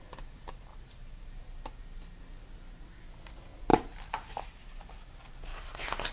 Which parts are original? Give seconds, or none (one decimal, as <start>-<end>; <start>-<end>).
0.0-0.7; 1.4-3.7; 4.3-5.5